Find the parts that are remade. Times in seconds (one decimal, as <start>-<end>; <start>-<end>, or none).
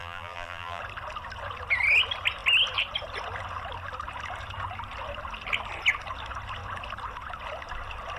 0.0-0.8